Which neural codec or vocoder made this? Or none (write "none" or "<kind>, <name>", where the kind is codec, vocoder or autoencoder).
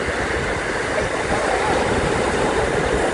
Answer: none